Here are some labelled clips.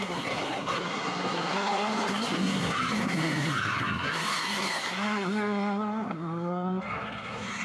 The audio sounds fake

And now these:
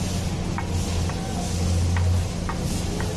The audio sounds real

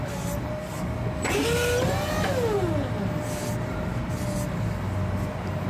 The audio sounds real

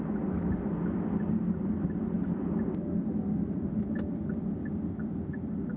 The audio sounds real